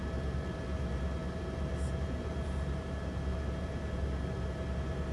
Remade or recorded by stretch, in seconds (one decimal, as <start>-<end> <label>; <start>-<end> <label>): 0.0-5.1 remade